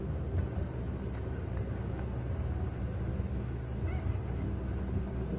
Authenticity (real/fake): real